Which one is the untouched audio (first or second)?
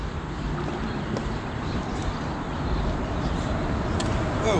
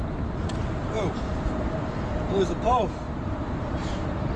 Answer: first